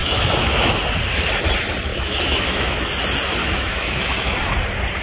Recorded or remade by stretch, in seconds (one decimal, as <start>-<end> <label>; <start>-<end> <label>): 0.0-0.7 remade; 0.7-1.9 recorded; 1.9-2.9 remade; 2.9-3.4 recorded; 3.4-4.3 remade; 4.3-5.0 recorded